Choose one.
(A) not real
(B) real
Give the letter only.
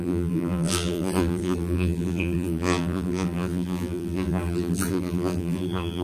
A